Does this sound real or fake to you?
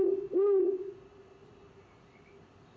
real